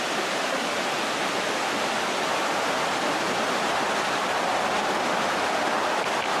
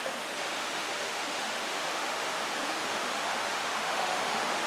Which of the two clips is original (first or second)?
first